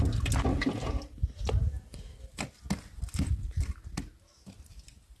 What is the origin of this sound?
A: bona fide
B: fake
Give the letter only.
A